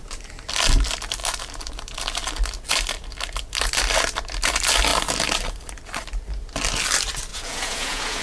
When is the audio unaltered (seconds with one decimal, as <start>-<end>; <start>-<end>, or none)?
0.0-7.3